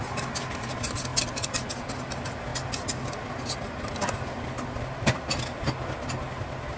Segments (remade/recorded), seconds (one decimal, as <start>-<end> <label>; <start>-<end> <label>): 0.0-6.8 recorded